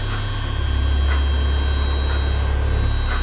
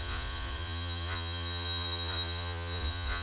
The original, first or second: first